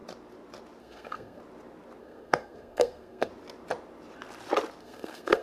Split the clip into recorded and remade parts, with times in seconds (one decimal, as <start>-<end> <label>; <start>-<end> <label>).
0.0-0.8 recorded; 0.8-1.4 remade; 1.4-2.0 recorded; 2.0-3.3 remade; 3.3-4.8 recorded; 4.8-5.4 remade

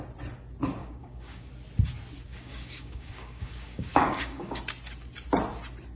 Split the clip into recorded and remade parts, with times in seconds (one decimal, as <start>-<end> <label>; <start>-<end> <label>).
0.0-0.8 recorded; 0.8-1.5 remade; 1.5-2.3 recorded; 2.3-4.6 remade; 4.6-6.0 recorded